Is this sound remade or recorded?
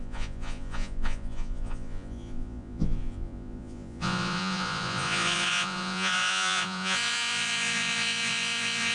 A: remade